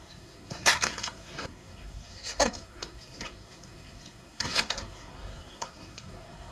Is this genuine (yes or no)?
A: no